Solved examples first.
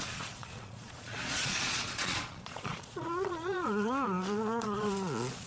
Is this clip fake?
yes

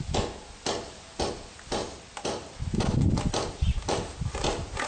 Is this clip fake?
no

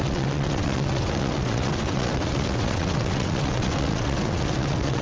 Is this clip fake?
yes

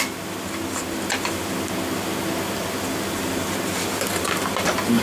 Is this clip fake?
no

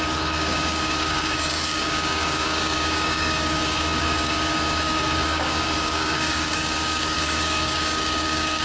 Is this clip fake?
yes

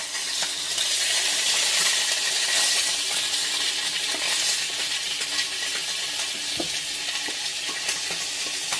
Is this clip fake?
no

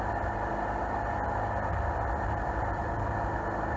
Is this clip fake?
no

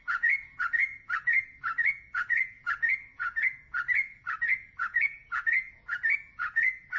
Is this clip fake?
yes